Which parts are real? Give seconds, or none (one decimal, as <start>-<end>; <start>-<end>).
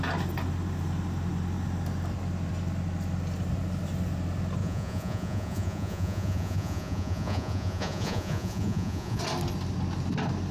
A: 0.0-4.6; 9.2-10.5